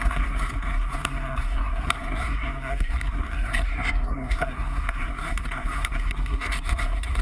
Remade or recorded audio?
remade